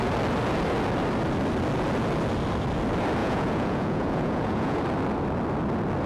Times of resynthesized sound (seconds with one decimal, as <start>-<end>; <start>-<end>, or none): 3.2-4.8